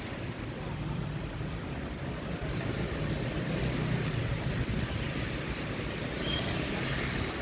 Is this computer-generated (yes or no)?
no